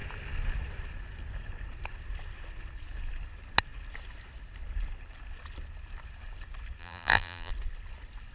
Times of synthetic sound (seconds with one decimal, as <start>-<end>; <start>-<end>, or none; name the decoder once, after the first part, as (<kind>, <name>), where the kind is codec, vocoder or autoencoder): 6.8-7.5 (vocoder, BigVGAN v2)